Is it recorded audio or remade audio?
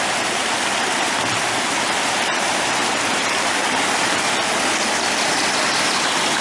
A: remade